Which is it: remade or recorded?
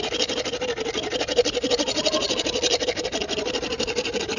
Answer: recorded